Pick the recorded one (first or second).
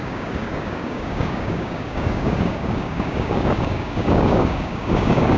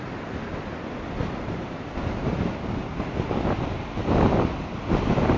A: second